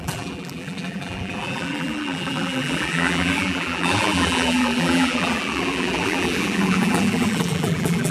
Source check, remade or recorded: remade